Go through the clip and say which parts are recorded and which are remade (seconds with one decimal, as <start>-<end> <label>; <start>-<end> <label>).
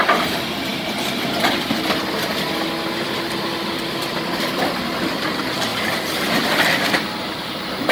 0.0-0.7 recorded; 0.7-1.4 remade; 1.4-4.0 recorded; 4.0-4.8 remade; 4.8-7.9 recorded